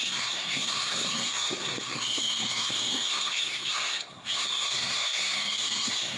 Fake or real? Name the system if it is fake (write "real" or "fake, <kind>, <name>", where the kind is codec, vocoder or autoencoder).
fake, codec, SNAC